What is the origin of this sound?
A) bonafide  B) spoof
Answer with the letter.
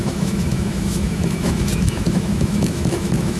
B